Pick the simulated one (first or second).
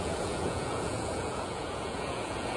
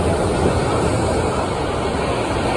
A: first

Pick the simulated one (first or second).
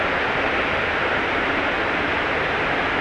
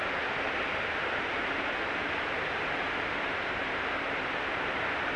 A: second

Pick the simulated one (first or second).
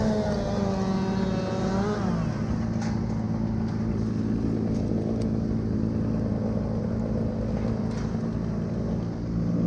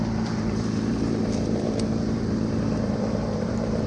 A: second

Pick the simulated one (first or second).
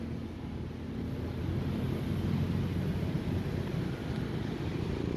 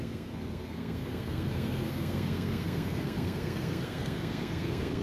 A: second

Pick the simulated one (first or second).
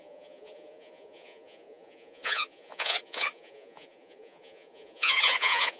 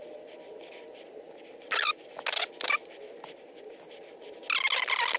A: first